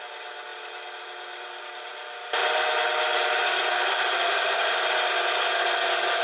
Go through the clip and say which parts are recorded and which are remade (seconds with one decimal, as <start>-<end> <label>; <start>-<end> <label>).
0.0-6.2 recorded